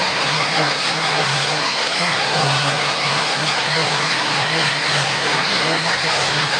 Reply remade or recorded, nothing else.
remade